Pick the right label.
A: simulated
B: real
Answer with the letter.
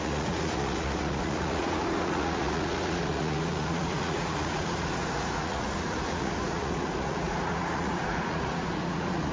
A